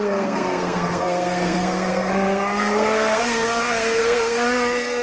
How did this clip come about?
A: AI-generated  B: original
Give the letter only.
A